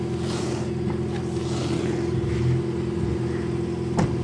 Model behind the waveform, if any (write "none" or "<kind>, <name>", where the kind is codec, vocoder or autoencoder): none